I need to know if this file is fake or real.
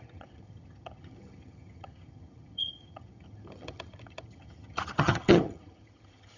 fake